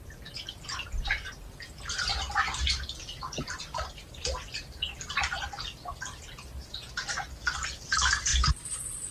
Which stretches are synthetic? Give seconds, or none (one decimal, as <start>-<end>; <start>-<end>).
none